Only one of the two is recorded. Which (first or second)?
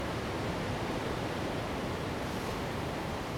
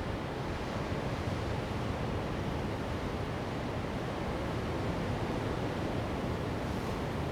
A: second